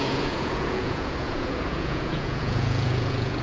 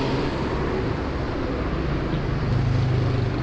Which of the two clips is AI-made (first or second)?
first